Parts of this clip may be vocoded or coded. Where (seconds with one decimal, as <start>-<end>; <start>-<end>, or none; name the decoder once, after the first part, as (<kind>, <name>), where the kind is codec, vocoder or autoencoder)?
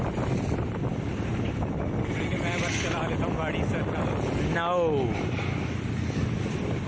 none